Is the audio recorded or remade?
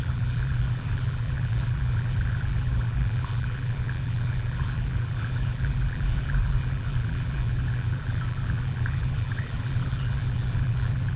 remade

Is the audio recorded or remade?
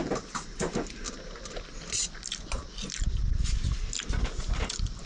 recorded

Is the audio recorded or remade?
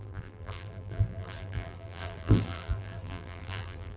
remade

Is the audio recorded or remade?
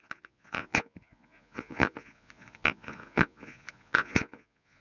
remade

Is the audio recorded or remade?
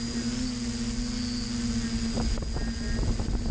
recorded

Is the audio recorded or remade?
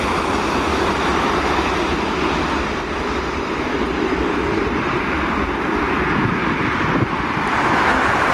remade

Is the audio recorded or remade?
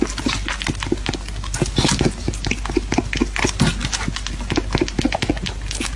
recorded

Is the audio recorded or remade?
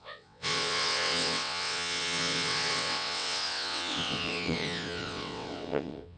remade